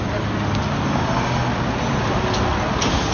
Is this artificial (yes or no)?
no